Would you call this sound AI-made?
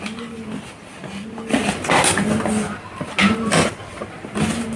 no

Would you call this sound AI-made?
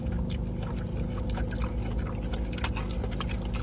no